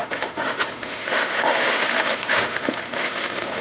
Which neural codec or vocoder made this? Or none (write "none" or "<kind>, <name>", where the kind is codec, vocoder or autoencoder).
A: autoencoder, DAC-VAE